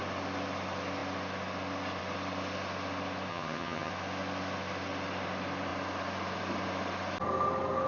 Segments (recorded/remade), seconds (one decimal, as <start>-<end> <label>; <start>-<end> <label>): 0.0-3.3 recorded; 3.3-3.9 remade; 3.9-7.9 recorded